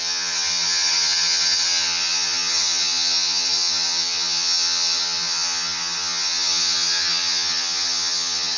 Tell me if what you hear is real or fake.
fake